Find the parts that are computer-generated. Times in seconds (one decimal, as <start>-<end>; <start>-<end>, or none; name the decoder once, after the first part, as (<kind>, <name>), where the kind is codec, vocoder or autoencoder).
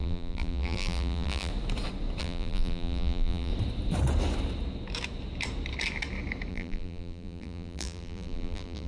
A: 0.0-1.5 (vocoder, BigVGAN v2); 2.2-3.5; 6.5-8.9